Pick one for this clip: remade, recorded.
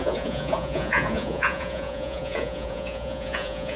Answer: remade